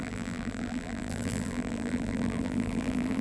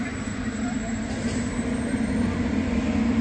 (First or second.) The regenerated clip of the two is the first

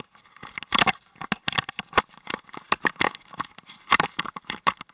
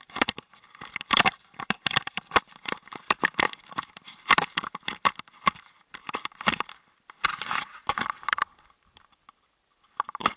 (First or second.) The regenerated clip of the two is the second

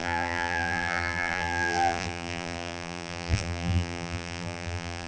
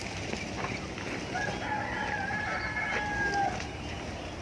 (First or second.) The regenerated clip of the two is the first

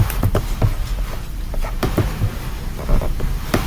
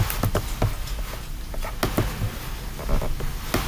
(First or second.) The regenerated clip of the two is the first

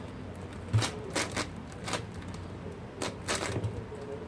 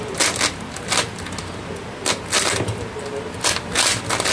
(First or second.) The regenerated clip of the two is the first